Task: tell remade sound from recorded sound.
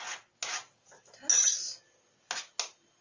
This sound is recorded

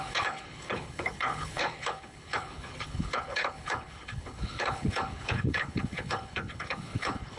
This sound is remade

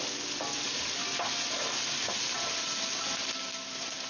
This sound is recorded